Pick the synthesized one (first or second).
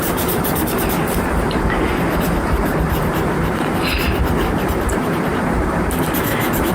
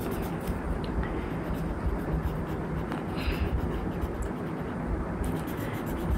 first